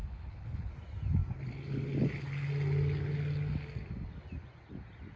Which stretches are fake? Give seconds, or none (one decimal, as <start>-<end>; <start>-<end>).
0.0-0.7